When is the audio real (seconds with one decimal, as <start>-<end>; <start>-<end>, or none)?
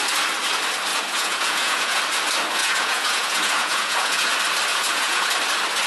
0.0-0.9; 2.0-2.6; 4.3-4.7; 5.3-5.9